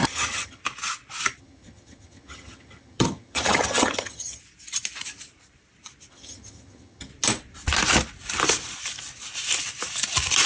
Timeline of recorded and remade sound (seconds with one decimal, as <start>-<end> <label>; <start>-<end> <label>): 0.0-0.6 remade; 0.6-1.4 recorded; 1.4-4.4 remade; 4.4-6.1 recorded; 6.1-7.1 remade; 7.1-10.5 recorded